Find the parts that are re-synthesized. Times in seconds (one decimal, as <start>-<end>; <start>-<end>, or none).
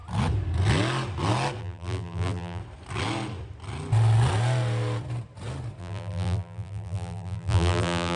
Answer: 1.6-2.6; 5.8-8.2